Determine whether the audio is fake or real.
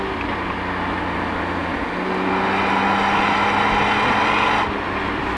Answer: real